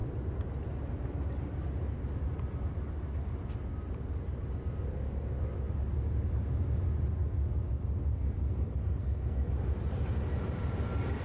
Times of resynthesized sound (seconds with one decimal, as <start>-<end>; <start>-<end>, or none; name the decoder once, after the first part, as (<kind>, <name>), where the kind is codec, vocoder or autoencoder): 8.1-9.5 (codec, SNAC)